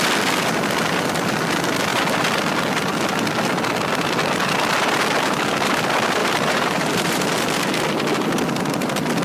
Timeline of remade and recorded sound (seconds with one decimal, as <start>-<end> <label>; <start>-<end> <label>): 0.0-6.2 recorded; 6.2-7.3 remade; 7.3-9.2 recorded